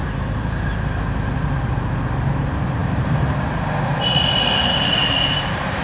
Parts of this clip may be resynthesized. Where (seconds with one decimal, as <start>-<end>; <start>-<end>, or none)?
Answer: 0.0-1.0; 2.8-5.8

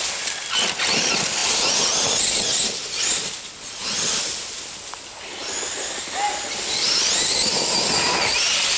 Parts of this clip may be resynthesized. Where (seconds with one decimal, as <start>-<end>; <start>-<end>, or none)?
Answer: none

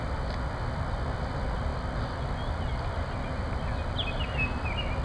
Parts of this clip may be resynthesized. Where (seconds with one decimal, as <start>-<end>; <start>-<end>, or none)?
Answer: none

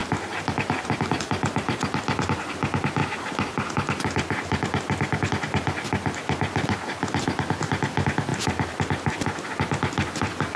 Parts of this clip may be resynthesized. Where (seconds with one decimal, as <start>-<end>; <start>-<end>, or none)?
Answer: 0.0-1.8

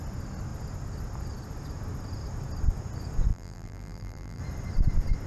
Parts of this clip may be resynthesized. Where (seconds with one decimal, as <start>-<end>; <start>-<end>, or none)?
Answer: 3.3-4.4

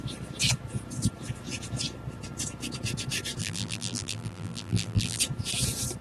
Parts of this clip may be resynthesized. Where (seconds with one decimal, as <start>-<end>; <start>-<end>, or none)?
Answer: 3.4-5.2